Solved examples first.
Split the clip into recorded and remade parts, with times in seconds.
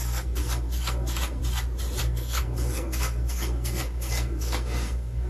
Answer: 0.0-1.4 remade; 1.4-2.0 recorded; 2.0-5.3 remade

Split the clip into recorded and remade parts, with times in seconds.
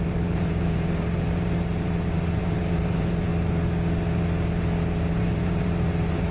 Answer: 0.0-3.3 remade; 3.3-5.2 recorded; 5.2-6.3 remade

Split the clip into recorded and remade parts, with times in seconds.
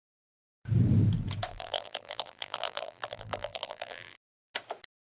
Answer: 0.0-1.5 recorded; 1.5-4.5 remade; 4.5-5.0 recorded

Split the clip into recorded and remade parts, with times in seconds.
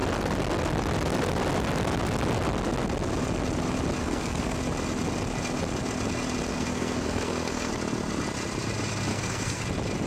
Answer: 0.0-4.0 recorded; 4.0-4.6 remade; 4.6-6.5 recorded; 6.5-7.7 remade; 7.7-9.1 recorded; 9.1-9.6 remade; 9.6-10.1 recorded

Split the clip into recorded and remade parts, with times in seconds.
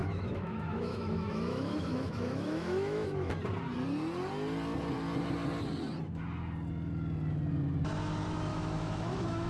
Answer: 0.0-3.3 remade; 3.3-8.5 recorded; 8.5-9.5 remade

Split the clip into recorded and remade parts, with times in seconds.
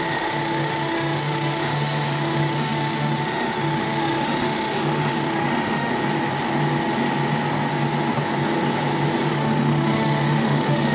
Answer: 0.0-5.9 remade; 5.9-9.3 recorded; 9.3-10.9 remade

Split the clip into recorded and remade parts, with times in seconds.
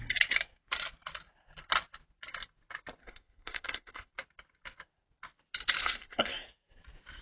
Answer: 0.0-3.0 recorded; 3.0-4.1 remade; 4.1-5.8 recorded; 5.8-6.5 remade; 6.5-7.2 recorded